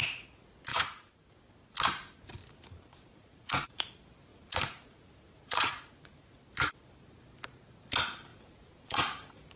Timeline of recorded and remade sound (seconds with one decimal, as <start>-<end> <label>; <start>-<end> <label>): 0.0-0.7 recorded; 0.7-1.3 remade; 1.3-2.9 recorded; 2.9-3.8 remade; 3.8-4.3 recorded; 4.3-6.4 remade; 6.4-8.3 recorded; 8.3-9.6 remade